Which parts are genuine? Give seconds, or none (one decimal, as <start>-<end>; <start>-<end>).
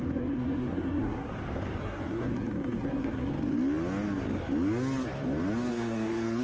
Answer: 1.3-1.8; 3.3-5.7